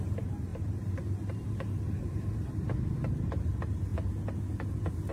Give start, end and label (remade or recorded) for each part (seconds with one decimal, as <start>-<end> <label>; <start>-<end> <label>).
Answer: 0.0-3.9 remade; 3.9-5.1 recorded